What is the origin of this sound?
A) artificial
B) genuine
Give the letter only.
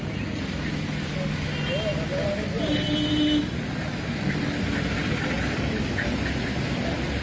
B